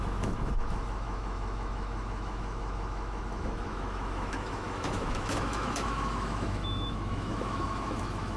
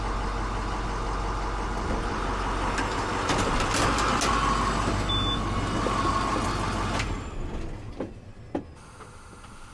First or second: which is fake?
first